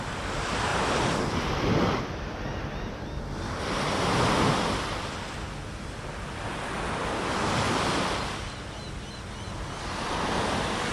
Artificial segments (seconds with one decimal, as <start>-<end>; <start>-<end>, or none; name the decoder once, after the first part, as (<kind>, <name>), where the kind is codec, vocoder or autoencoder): none